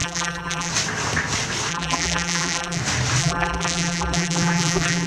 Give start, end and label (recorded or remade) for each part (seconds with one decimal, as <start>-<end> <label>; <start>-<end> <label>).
0.0-0.7 remade; 0.7-1.7 recorded; 1.7-2.8 remade; 2.8-3.2 recorded; 3.2-5.1 remade